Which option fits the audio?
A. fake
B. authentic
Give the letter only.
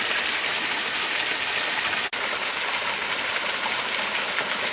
B